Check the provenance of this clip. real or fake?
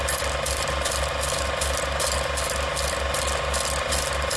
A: real